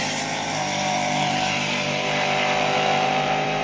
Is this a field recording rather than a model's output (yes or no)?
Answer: no